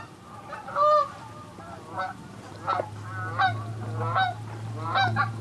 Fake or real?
real